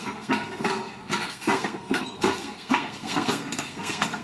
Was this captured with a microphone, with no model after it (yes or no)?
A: no